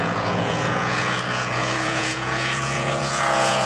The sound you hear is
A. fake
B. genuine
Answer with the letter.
A